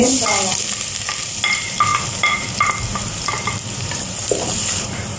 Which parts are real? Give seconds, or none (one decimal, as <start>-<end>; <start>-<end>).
1.9-2.8